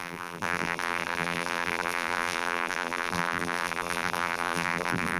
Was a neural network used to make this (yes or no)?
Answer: yes